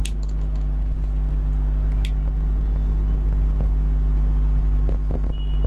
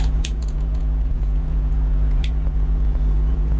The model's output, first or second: second